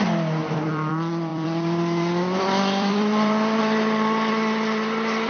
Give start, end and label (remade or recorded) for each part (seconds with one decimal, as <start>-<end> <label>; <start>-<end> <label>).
0.0-0.4 recorded; 0.4-0.9 remade; 0.9-1.3 recorded; 1.3-4.3 remade; 4.3-5.3 recorded